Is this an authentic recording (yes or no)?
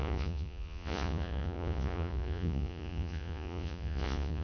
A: no